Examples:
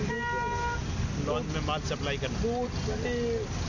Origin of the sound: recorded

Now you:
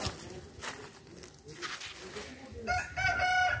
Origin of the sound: recorded